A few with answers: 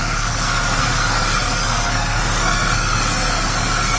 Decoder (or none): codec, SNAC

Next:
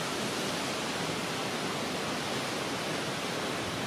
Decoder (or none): none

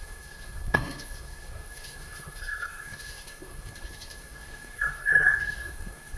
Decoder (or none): codec, SNAC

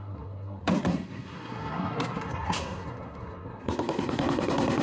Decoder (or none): codec, SNAC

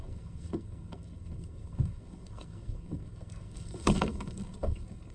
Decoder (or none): codec, SNAC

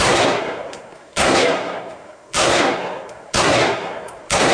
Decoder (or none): codec, SNAC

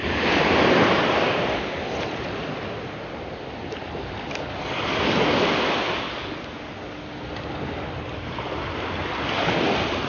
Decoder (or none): none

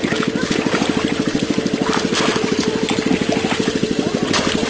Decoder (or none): none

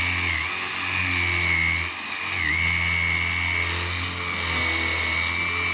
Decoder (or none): none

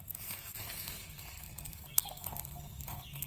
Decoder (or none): codec, SNAC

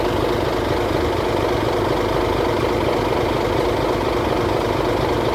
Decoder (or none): none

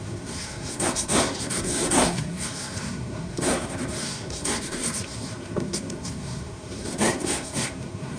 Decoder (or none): codec, SNAC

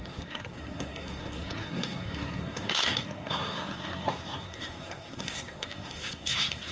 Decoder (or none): codec, SNAC